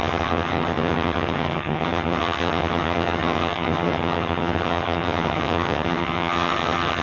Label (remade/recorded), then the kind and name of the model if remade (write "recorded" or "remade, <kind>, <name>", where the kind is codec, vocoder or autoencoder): remade, vocoder, HiFi-GAN